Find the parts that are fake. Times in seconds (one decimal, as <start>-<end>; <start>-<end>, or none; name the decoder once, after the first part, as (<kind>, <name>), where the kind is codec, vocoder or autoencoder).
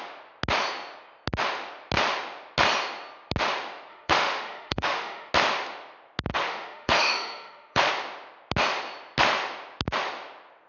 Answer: 3.9-5.3 (autoencoder, DAC-VAE); 6.3-7.9